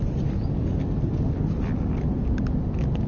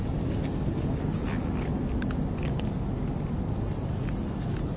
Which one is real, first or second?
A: second